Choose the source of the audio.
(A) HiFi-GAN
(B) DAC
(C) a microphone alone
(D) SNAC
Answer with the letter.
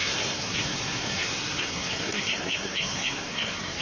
D